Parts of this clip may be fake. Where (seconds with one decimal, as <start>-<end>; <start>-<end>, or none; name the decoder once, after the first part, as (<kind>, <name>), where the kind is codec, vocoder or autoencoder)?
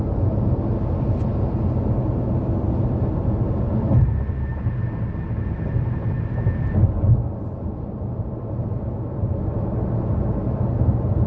none